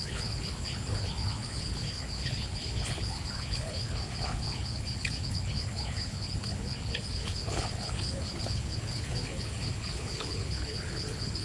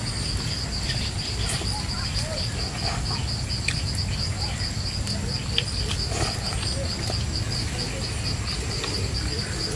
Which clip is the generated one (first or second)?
first